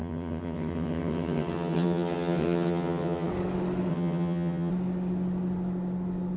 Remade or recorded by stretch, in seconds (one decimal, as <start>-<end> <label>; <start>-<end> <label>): 0.0-3.3 remade; 3.3-3.9 recorded; 3.9-4.7 remade; 4.7-6.4 recorded